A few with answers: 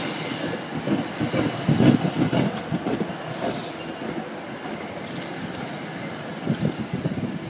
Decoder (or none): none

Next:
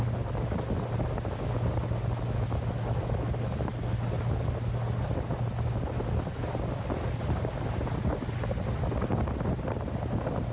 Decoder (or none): none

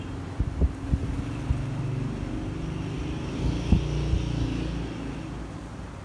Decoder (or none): none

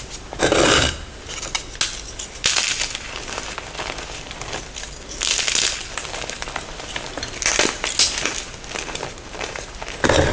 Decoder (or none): none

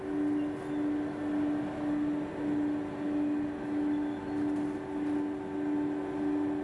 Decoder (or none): none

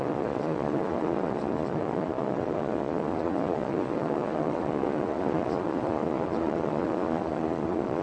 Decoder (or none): vocoder, Vocos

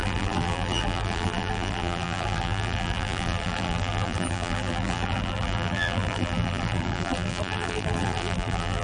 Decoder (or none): vocoder, BigVGAN v2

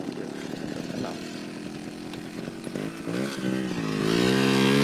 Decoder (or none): none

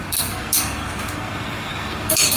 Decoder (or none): codec, SNAC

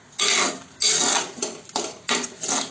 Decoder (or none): none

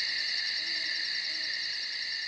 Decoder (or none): none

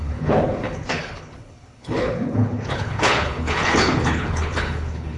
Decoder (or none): codec, HILCodec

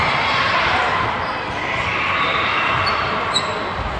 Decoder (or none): none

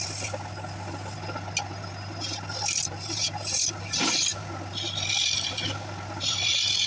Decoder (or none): none